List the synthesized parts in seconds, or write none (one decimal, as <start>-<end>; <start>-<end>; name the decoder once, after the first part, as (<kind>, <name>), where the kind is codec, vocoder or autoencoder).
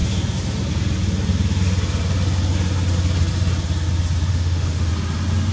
4.3-4.9 (autoencoder, DAC-VAE)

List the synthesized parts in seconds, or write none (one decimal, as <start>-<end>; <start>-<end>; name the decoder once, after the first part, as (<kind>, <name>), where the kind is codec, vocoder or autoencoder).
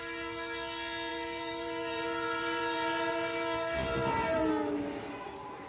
1.1-4.5 (vocoder, BigVGAN v2)